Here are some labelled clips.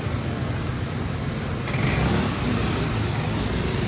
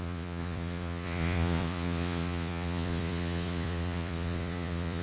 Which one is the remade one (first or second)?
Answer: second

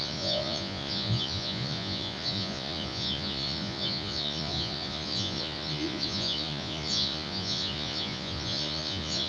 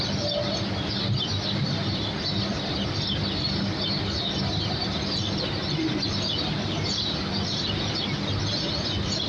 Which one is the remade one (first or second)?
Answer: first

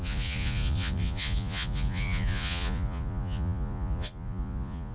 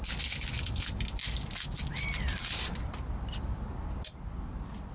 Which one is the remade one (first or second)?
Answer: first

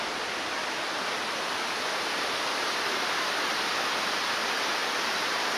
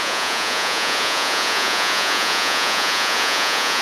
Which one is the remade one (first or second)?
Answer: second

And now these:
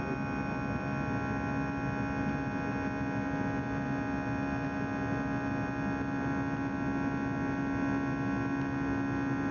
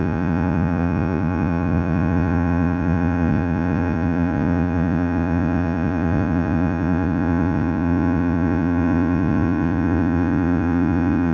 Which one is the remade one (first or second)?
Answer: second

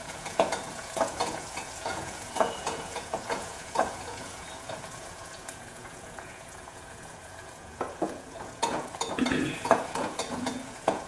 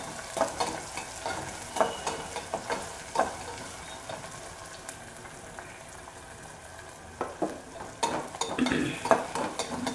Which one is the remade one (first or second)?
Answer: first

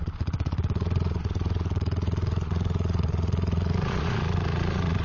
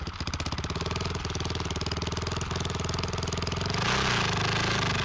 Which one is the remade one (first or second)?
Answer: first